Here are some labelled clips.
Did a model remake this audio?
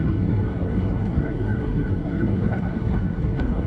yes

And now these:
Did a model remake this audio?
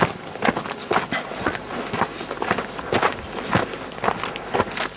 no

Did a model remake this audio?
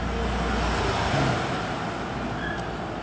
no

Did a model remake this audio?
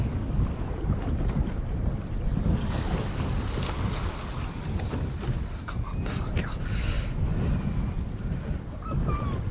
no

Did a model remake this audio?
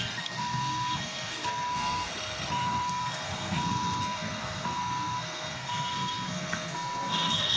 yes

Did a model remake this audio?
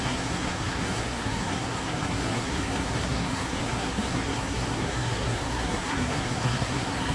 yes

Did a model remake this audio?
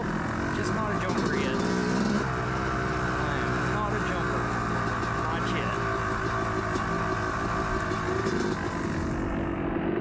no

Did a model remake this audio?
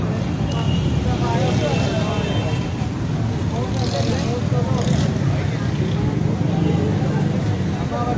no